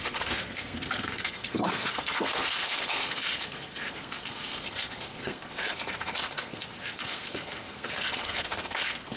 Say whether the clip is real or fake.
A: fake